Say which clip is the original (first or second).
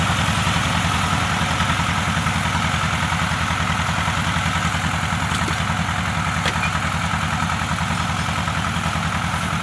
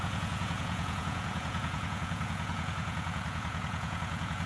first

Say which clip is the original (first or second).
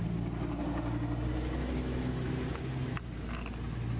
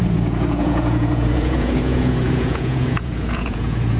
first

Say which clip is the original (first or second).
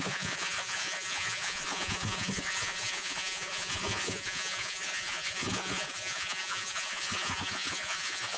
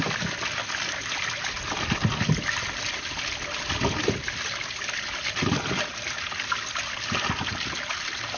second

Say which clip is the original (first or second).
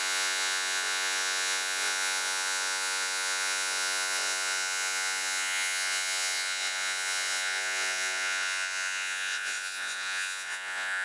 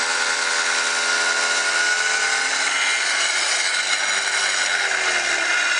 second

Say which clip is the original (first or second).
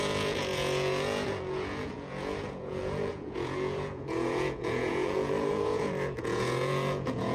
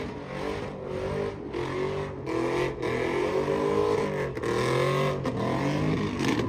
second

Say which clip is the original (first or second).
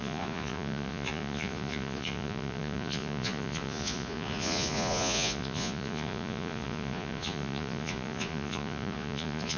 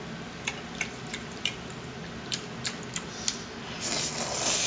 second